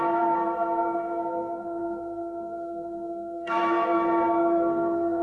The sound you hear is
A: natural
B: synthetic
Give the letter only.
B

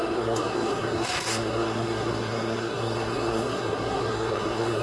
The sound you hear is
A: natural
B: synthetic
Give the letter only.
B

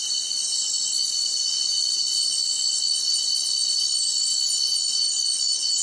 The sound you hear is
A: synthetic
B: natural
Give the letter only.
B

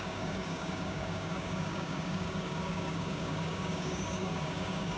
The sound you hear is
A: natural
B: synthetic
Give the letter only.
B